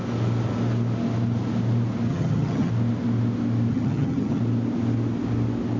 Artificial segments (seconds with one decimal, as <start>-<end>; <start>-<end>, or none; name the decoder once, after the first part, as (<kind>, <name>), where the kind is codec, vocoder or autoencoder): 2.1-2.7 (vocoder, HiFi-GAN); 3.7-4.4